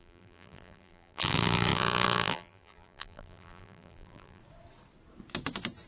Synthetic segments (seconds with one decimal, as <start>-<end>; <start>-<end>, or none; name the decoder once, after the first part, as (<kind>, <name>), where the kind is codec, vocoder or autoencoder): 0.0-4.4 (vocoder, BigVGAN v2)